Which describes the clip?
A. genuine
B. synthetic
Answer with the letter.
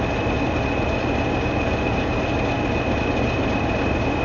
A